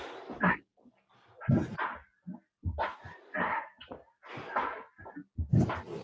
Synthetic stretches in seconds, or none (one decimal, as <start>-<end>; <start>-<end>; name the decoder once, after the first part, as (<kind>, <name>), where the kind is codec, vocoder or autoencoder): none